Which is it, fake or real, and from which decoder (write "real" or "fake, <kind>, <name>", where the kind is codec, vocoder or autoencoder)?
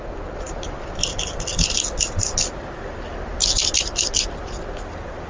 real